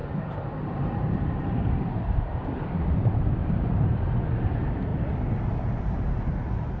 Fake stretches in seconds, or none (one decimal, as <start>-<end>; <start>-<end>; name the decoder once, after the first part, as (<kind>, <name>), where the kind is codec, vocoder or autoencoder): 0.0-2.7 (vocoder, BigVGAN v2); 3.4-4.1